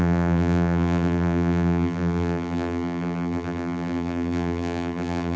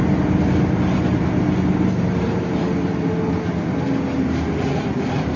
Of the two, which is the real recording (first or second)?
second